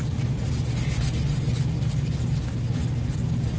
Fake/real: real